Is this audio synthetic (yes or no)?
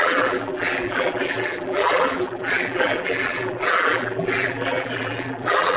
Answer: yes